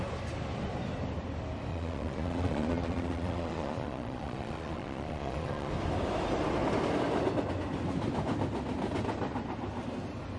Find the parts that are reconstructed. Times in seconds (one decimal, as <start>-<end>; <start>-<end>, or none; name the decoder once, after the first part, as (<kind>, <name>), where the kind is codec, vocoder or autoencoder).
1.7-5.7 (vocoder, Vocos)

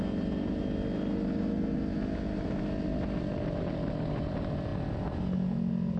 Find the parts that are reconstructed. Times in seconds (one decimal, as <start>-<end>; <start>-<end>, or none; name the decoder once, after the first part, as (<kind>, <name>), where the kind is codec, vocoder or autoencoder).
none

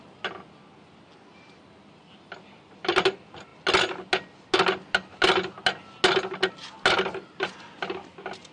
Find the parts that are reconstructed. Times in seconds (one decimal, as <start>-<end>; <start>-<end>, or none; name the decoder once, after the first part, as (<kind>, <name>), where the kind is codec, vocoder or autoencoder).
none

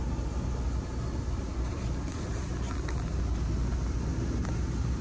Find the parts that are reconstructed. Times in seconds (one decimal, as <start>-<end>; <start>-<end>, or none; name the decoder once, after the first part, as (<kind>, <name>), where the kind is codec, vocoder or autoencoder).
none